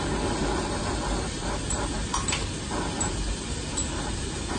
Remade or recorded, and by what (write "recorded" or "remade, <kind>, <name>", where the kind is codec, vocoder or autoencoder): recorded